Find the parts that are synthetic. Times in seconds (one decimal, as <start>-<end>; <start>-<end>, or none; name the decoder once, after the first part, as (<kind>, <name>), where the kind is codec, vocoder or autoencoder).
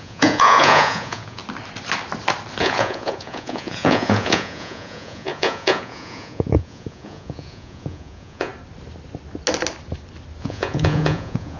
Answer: 0.0-1.4 (vocoder, Vocos); 2.6-8.5; 10.4-11.6